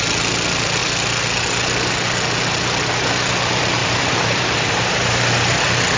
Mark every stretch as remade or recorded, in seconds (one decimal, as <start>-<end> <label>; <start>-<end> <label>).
0.0-3.8 recorded; 3.8-5.6 remade; 5.6-6.0 recorded